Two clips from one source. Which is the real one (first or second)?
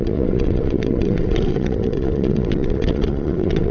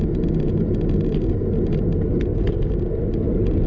second